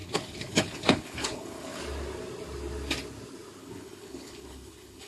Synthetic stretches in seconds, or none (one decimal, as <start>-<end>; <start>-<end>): 0.0-1.8; 3.6-5.1